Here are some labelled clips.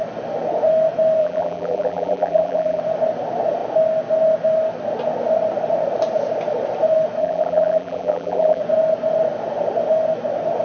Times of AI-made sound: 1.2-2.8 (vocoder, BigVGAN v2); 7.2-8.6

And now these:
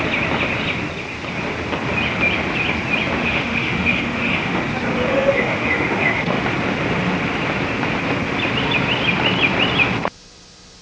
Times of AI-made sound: 3.2-4.6 (autoencoder, DAC-VAE); 5.1-6.4

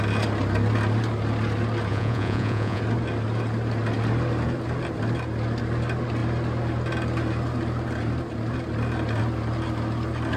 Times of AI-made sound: 1.9-2.8 (vocoder, Vocos)

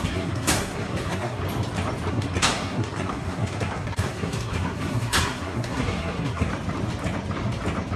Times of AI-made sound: 0.0-1.4 (codec, SNAC); 2.1-6.5

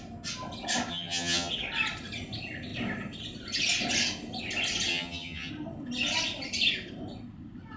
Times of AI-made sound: 0.9-1.5 (vocoder, HiFi-GAN); 4.9-5.5

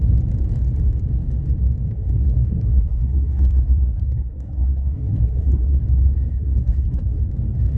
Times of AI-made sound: 1.9-5.8 (codec, SNAC); 6.3-7.2

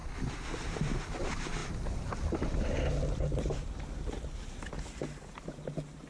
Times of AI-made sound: none